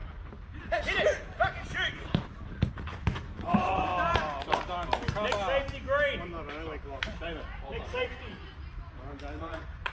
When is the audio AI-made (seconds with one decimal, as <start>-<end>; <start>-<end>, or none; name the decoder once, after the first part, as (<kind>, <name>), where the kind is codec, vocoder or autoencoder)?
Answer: 2.7-3.9 (vocoder, Vocos); 7.6-8.4; 9.4-9.9